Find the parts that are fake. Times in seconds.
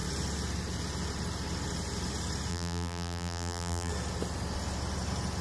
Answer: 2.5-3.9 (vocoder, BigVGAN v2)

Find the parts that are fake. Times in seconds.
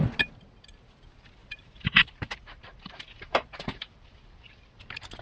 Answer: 1.4-4.5 (vocoder, BigVGAN v2)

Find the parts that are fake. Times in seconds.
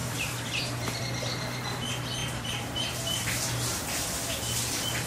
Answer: 0.0-1.0 (vocoder, BigVGAN v2); 2.2-4.1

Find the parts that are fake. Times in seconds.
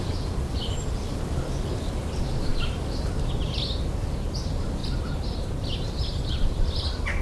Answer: 2.5-3.5 (vocoder, BigVGAN v2); 4.8-5.4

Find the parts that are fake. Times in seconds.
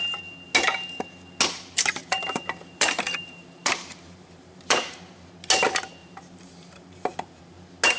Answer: 2.0-5.3 (vocoder, BigVGAN v2); 6.0-7.4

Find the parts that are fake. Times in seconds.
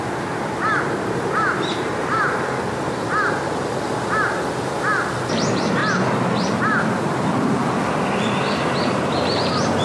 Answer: 0.0-2.0 (vocoder, BigVGAN v2); 5.2-5.8; 8.4-9.8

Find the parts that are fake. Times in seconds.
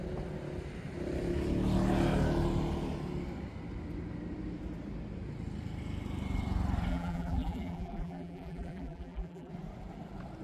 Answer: 6.9-9.5 (vocoder, BigVGAN v2)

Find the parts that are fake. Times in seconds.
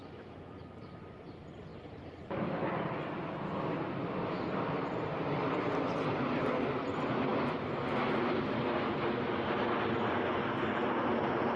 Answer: 1.7-2.9 (vocoder, BigVGAN v2)